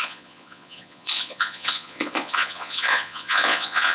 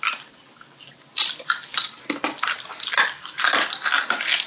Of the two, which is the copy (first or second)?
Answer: first